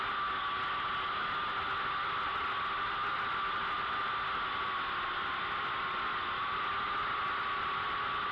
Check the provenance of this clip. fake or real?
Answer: real